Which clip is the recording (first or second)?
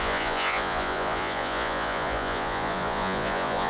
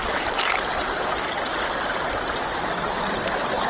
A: second